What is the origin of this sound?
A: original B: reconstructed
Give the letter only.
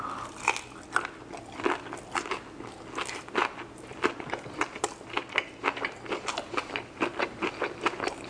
A